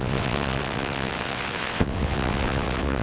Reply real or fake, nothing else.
fake